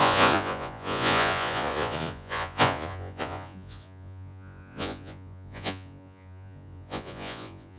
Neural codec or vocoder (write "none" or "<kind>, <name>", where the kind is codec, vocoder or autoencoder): vocoder, Vocos